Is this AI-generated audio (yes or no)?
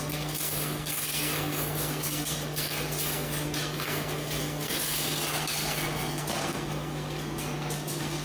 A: yes